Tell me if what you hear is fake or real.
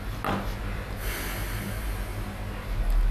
real